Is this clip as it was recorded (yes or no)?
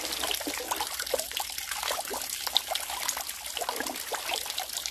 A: yes